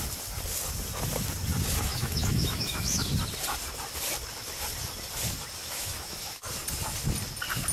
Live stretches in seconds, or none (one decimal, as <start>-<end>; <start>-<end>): 0.0-1.9; 3.1-5.6; 6.5-7.7